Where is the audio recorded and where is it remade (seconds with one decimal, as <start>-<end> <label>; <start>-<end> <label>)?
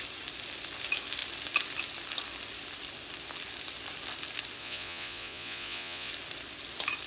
0.0-4.6 recorded; 4.6-6.1 remade; 6.1-7.1 recorded